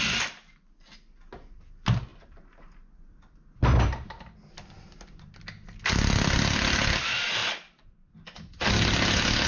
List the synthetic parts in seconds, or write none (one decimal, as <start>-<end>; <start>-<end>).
none